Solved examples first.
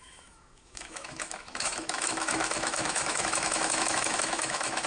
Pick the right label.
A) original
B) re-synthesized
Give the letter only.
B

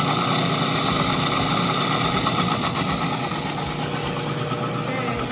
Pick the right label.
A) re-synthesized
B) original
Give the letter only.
B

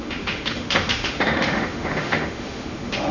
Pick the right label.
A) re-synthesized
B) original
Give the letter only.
A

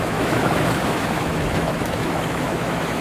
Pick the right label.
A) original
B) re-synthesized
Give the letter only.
B